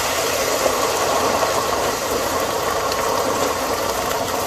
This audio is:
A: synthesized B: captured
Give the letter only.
A